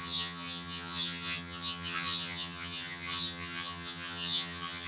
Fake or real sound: fake